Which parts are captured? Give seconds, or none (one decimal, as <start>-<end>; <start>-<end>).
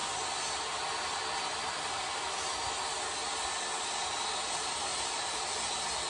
0.0-4.9; 5.5-6.1